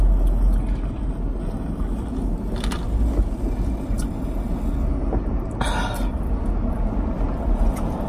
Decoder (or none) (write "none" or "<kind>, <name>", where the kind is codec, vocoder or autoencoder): none